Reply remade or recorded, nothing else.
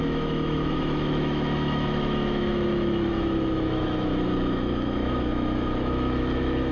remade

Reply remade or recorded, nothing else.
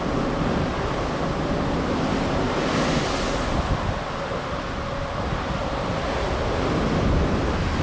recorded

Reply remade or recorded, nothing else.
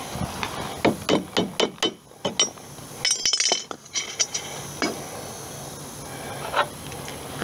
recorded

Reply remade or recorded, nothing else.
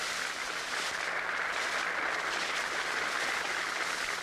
recorded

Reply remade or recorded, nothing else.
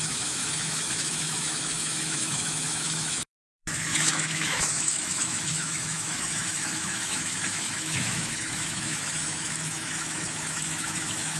remade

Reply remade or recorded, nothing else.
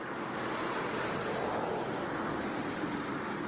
recorded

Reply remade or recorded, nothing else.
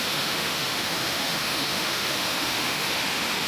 remade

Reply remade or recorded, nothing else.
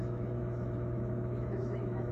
remade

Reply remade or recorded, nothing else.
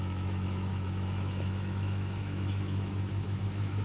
remade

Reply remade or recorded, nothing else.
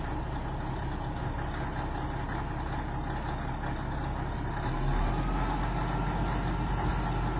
recorded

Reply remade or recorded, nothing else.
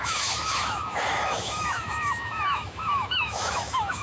remade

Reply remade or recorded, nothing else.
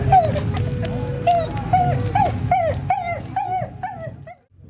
recorded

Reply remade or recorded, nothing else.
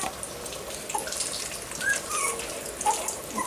recorded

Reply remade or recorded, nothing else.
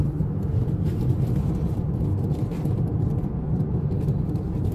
recorded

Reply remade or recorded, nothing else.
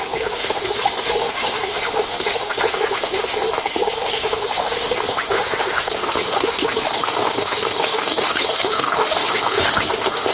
remade